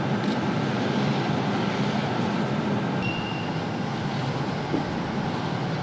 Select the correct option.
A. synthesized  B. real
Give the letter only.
B